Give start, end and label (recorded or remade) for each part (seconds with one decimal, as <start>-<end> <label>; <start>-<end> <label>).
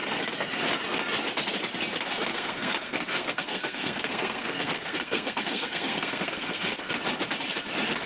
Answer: 0.0-2.3 recorded; 2.3-6.9 remade; 6.9-8.1 recorded